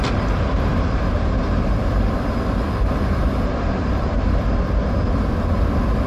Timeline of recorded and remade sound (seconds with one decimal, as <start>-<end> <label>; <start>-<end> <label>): 0.0-0.7 recorded; 0.7-4.4 remade; 4.4-6.1 recorded